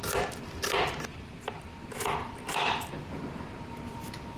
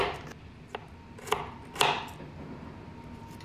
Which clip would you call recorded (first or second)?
second